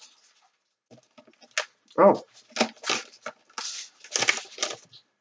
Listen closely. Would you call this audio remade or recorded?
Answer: recorded